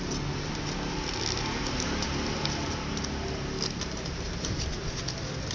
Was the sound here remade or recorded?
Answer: recorded